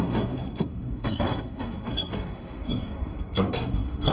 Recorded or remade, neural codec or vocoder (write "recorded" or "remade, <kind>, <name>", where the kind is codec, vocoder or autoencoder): remade, codec, SNAC